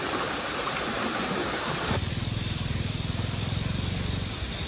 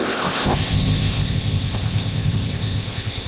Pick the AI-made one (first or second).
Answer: second